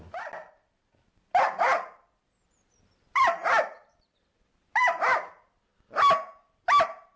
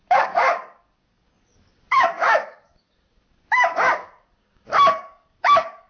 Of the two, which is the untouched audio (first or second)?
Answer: first